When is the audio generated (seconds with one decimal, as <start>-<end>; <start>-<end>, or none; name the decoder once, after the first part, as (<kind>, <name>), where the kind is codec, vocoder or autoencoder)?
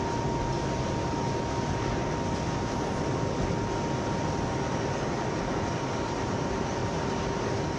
none